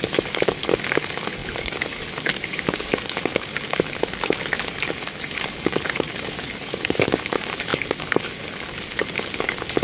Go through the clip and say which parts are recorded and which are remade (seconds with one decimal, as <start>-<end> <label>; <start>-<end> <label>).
0.0-9.8 remade

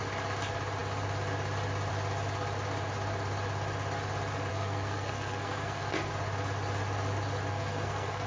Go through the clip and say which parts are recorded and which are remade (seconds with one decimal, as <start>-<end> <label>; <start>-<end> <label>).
0.0-4.5 recorded; 4.5-6.1 remade; 6.1-7.5 recorded; 7.5-8.3 remade

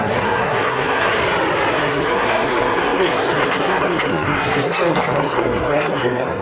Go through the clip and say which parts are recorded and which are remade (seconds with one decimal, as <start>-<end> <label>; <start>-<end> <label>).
0.0-1.2 remade; 1.2-1.7 recorded; 1.7-6.4 remade

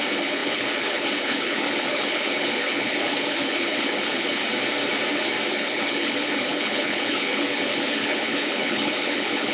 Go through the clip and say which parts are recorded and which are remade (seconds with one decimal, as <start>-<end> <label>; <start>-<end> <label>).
0.0-4.4 remade; 4.4-5.5 recorded; 5.5-9.5 remade

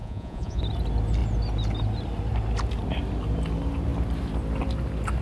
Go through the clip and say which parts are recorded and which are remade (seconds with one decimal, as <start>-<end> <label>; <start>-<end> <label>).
0.0-0.6 remade; 0.6-5.2 recorded

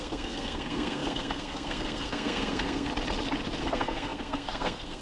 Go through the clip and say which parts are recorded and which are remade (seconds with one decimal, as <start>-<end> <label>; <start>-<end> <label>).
0.0-2.9 remade; 2.9-3.6 recorded; 3.6-5.0 remade

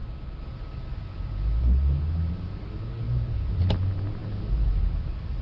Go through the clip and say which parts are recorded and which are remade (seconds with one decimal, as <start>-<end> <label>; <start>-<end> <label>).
0.0-5.4 recorded

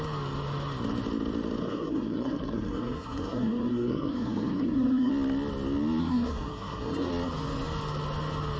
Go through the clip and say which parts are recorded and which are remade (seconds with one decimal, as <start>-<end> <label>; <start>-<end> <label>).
0.0-1.6 recorded; 1.6-5.1 remade; 5.1-6.0 recorded; 6.0-7.1 remade; 7.1-8.6 recorded